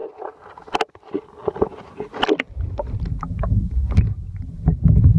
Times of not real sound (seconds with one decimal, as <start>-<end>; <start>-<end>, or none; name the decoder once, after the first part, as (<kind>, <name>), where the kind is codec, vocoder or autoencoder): none